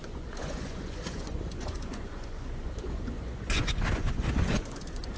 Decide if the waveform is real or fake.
fake